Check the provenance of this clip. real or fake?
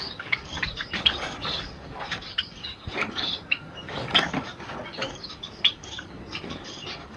fake